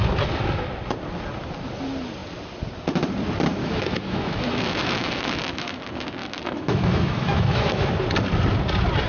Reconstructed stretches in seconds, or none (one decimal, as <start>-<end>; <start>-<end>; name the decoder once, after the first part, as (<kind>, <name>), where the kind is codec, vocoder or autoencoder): 3.6-5.8 (autoencoder, DAC-VAE); 6.2-7.9